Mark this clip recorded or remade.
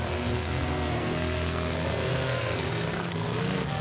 remade